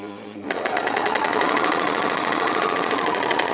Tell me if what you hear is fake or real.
fake